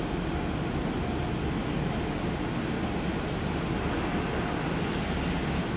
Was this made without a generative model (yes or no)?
yes